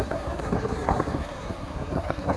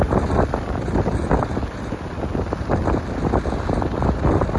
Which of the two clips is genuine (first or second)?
second